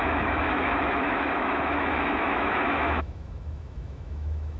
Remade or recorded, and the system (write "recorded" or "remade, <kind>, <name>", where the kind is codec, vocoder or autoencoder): remade, autoencoder, DAC-VAE